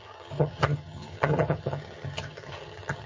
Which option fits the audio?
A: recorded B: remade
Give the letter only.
B